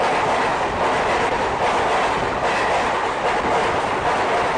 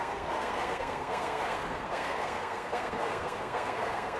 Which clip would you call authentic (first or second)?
first